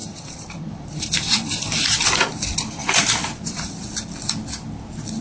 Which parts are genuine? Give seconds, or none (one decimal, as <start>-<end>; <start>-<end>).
1.9-2.8; 3.9-5.2